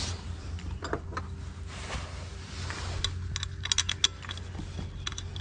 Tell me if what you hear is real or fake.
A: real